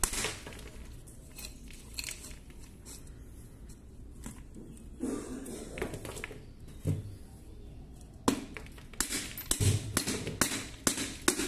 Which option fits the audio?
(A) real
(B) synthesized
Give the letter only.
A